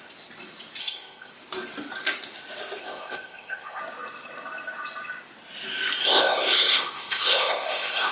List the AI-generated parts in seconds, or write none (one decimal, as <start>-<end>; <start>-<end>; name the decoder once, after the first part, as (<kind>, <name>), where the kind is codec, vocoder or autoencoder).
0.8-1.3 (codec, ZipCodec); 2.8-3.8; 6.0-8.1